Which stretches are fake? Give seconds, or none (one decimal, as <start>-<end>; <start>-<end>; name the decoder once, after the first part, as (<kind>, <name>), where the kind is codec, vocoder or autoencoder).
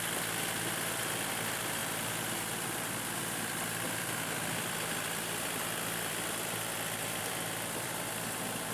0.0-8.7 (vocoder, BigVGAN v2)